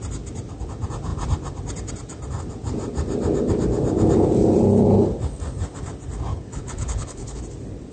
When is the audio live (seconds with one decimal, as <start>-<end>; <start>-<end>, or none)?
0.0-6.3; 7.4-7.9